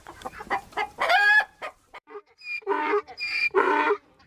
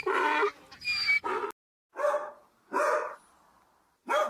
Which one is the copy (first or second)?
first